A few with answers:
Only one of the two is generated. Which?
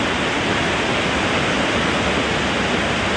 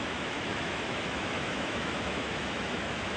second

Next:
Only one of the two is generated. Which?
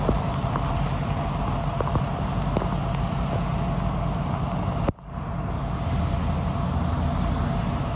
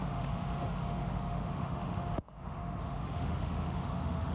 second